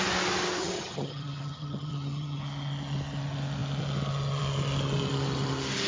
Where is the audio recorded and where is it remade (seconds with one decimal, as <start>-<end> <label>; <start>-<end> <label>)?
0.0-0.6 recorded; 0.6-2.4 remade; 2.4-5.9 recorded